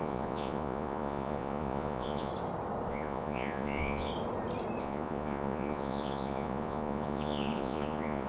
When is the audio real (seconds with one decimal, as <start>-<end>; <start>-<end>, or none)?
2.3-2.9; 4.1-4.8